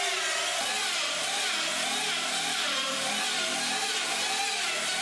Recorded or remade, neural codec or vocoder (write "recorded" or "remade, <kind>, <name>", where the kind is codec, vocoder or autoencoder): recorded